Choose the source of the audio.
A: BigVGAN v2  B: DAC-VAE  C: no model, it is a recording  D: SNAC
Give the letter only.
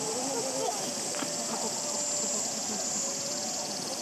C